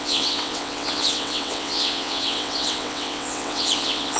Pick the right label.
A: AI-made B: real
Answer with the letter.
A